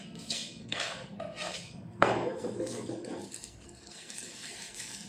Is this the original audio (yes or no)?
no